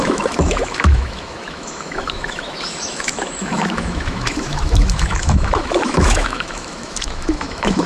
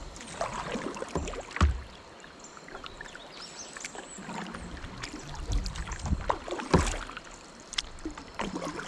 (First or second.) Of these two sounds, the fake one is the first